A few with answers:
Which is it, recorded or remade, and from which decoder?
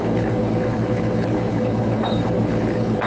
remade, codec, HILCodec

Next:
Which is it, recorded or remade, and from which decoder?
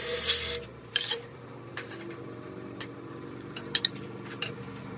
remade, vocoder, BigVGAN v2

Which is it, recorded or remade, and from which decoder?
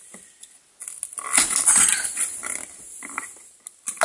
recorded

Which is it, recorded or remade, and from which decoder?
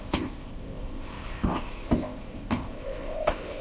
remade, codec, ZipCodec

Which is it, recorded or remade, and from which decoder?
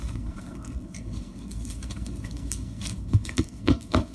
remade, codec, SNAC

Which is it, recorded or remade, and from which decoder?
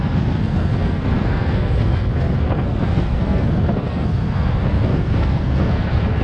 remade, codec, SNAC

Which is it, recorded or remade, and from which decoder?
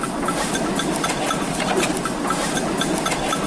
recorded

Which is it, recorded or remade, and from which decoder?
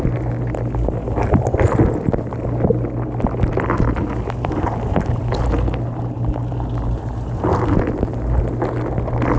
recorded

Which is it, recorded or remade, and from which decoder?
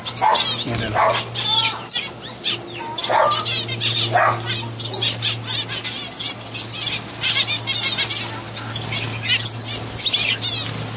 recorded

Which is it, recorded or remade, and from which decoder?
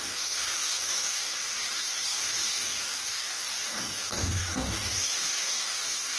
remade, codec, DAC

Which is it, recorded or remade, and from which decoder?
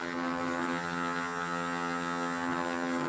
remade, vocoder, HiFi-GAN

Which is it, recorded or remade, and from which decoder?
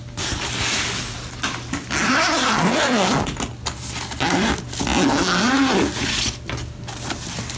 recorded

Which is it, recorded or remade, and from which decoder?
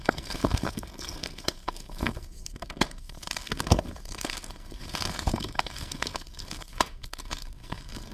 remade, codec, SNAC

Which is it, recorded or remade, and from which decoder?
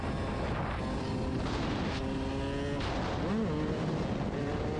recorded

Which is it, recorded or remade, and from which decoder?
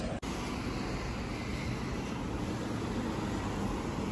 recorded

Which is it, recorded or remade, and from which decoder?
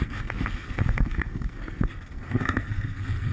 remade, codec, SNAC